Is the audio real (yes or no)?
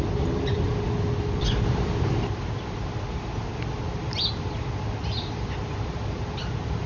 yes